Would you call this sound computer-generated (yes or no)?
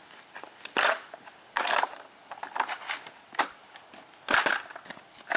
no